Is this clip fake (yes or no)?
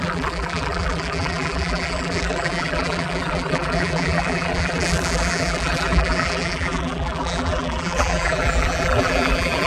yes